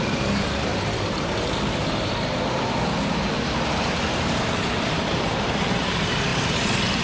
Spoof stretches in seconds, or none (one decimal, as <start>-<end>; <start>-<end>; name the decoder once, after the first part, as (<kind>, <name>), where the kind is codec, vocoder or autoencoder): 0.0-7.0 (vocoder, BigVGAN v2)